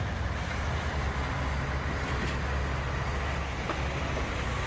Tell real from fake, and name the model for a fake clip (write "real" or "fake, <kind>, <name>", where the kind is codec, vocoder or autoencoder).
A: real